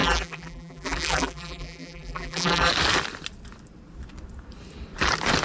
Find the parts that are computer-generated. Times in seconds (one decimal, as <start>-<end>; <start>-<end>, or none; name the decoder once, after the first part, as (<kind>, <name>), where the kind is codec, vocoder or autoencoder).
0.0-2.7 (vocoder, BigVGAN v2)